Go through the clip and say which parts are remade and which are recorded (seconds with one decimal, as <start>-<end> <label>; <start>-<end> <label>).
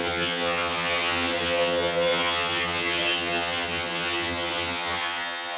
0.0-5.6 remade